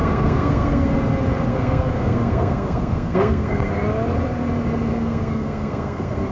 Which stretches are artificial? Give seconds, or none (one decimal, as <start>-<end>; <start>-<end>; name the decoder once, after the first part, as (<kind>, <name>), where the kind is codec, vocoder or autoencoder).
0.0-0.9 (codec, SNAC); 1.5-3.7; 4.9-6.3